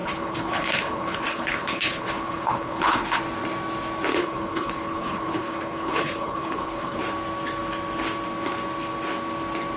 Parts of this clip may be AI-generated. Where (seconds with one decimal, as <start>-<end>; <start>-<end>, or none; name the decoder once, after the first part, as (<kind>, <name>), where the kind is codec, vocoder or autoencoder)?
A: 0.0-3.2 (codec, HILCodec); 4.1-7.0